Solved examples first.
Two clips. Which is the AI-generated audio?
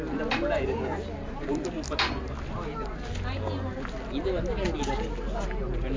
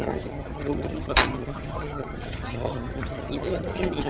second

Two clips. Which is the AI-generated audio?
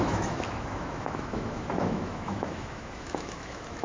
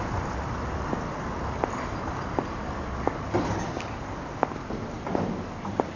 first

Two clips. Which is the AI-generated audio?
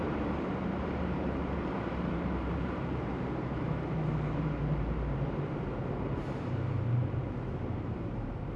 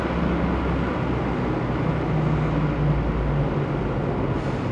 first